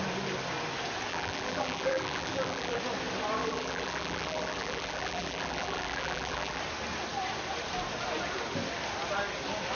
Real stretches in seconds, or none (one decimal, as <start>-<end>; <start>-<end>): 0.0-1.1; 2.8-3.4; 6.6-9.7